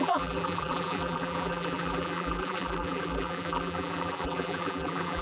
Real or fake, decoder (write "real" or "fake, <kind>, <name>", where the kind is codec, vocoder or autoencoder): fake, vocoder, BigVGAN v2